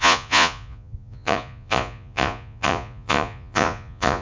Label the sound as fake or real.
fake